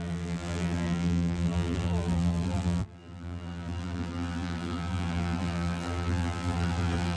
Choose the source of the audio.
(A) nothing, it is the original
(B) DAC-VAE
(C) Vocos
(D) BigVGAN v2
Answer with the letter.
D